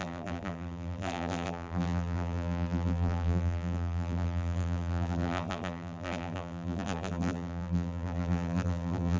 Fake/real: fake